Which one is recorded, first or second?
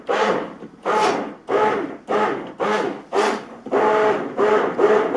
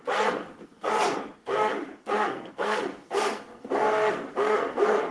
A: first